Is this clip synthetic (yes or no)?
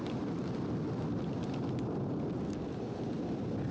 no